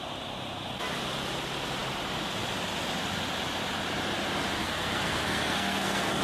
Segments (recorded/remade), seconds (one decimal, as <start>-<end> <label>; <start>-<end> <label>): 0.0-4.6 recorded; 4.6-6.2 remade